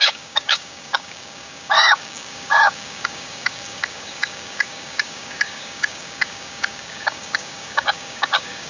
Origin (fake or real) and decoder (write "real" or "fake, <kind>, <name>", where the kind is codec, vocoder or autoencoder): fake, codec, DAC